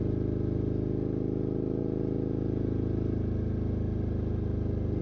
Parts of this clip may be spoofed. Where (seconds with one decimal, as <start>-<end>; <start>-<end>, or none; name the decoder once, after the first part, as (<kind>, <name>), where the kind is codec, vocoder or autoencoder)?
none